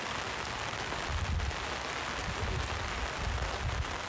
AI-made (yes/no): no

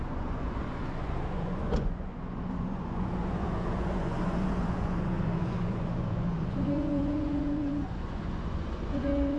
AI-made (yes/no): yes